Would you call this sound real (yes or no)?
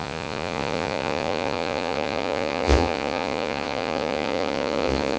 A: no